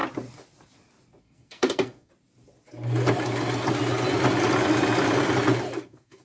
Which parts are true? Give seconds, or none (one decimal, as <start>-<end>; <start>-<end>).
0.0-1.2; 2.1-5.8